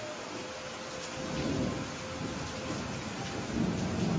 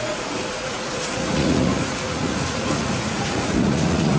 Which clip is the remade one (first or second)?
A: second